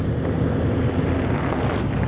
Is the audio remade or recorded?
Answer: recorded